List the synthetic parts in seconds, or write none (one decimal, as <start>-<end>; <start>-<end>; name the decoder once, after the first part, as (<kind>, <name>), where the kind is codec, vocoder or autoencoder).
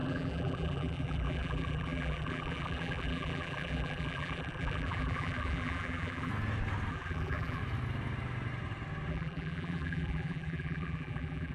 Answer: 0.0-6.3 (vocoder, BigVGAN v2); 6.9-7.6; 9.1-11.5